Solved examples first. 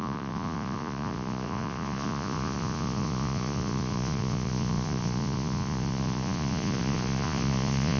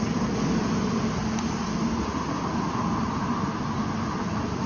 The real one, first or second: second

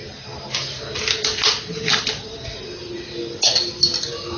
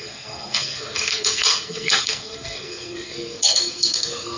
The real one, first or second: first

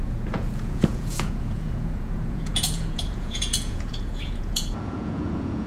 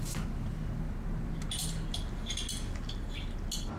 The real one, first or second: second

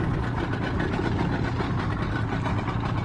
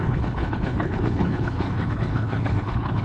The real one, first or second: first